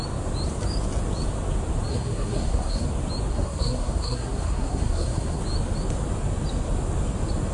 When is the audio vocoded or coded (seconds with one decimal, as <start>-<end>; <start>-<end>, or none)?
1.9-2.9; 3.3-5.4